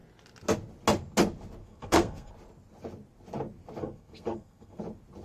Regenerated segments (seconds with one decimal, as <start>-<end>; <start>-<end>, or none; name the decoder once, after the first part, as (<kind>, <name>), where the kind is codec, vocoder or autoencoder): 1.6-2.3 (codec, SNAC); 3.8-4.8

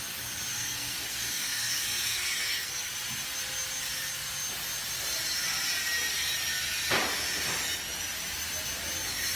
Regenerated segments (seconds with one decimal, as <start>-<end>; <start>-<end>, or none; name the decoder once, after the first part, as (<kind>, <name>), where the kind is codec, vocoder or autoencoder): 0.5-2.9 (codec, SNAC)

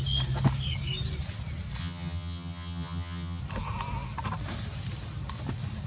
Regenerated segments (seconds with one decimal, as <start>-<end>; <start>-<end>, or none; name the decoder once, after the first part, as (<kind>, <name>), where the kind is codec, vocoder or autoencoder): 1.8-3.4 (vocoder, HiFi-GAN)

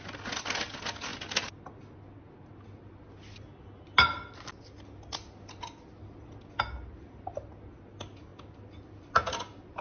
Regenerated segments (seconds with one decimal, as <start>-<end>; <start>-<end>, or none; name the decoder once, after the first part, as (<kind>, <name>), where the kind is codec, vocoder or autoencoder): none

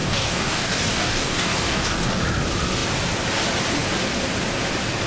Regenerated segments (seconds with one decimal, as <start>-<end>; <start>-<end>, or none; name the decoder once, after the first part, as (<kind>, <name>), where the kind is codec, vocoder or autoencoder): 0.0-2.2 (codec, DAC)

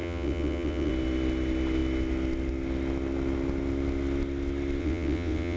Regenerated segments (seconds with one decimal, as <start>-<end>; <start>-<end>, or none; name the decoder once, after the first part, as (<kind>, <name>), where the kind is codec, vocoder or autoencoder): 0.0-0.9 (vocoder, WaveNeXt); 4.8-5.6

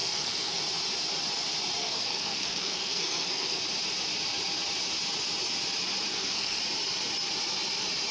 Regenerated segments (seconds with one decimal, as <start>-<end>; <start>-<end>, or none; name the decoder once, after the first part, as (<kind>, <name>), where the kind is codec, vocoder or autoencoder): 0.0-0.6 (codec, SNAC); 1.8-3.6; 6.1-6.6